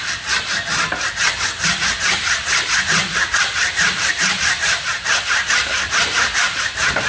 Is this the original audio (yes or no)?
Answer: yes